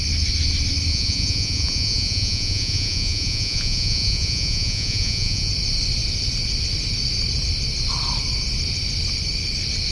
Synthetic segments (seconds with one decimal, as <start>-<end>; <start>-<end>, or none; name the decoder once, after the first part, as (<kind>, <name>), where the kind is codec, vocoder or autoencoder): 0.9-5.5 (vocoder, Vocos)